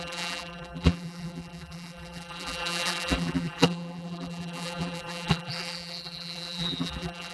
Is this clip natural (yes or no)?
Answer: no